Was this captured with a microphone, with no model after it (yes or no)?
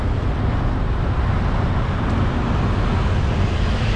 yes